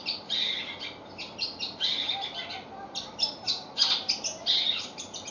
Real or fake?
real